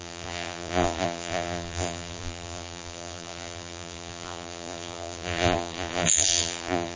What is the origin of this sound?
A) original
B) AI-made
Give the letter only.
B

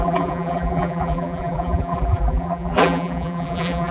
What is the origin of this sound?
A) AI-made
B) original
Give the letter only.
A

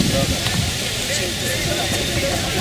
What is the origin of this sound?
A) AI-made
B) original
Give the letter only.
A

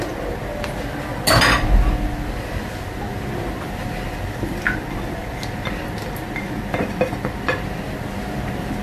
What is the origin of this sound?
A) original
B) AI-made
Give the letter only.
A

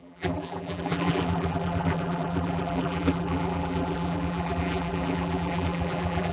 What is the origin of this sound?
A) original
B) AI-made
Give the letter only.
B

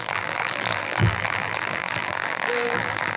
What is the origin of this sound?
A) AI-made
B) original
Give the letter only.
A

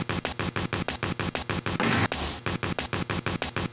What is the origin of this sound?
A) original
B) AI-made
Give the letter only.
A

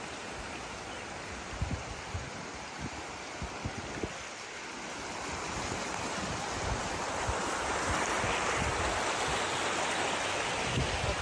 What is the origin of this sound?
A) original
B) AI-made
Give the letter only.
A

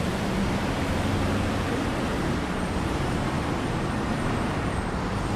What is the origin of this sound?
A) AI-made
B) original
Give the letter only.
A